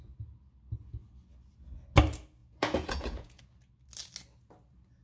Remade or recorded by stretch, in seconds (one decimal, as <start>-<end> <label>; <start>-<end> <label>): 0.0-2.4 recorded; 2.4-3.4 remade; 3.4-5.0 recorded